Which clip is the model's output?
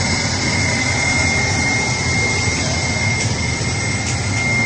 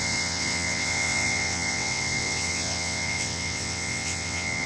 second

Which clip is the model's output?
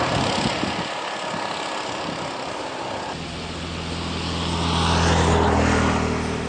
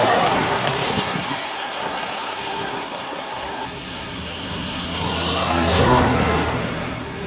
second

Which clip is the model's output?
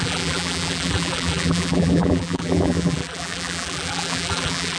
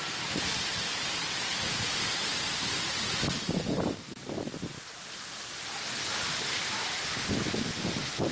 first